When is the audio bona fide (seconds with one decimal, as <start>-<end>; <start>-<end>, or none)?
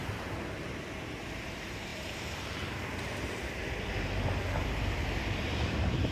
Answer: none